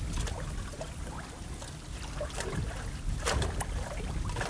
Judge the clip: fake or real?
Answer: real